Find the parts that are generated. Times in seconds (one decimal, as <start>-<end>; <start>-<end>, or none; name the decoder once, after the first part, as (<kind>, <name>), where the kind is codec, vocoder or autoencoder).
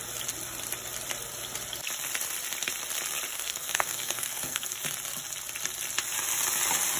3.3-4.8 (codec, SNAC)